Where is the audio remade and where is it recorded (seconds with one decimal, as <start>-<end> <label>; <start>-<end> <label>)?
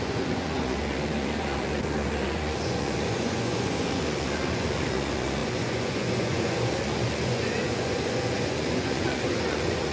0.0-9.9 remade